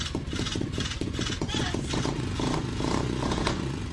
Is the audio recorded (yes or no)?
no